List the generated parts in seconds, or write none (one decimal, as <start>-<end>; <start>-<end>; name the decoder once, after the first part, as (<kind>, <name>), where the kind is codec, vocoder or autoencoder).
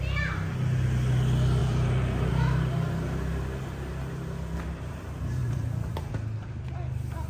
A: 1.6-2.3 (vocoder, BigVGAN v2); 5.4-6.1